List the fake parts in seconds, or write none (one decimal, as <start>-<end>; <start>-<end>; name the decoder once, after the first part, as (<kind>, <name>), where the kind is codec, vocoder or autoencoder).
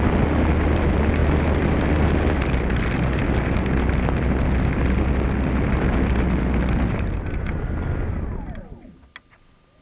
none